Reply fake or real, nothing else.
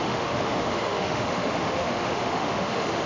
fake